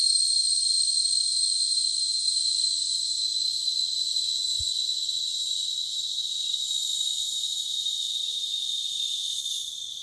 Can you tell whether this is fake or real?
fake